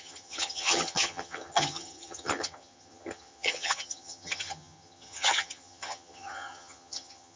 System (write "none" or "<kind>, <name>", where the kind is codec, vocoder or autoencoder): vocoder, HiFi-GAN